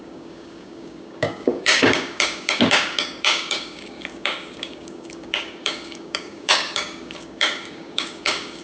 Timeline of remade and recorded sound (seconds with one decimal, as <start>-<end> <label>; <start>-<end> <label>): 0.0-8.6 remade